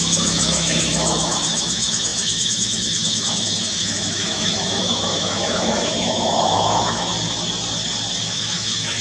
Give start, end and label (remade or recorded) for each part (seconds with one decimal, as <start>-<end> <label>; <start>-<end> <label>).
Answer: 0.0-7.1 remade; 7.1-8.2 recorded; 8.2-9.0 remade